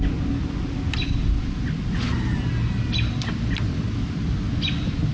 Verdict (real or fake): real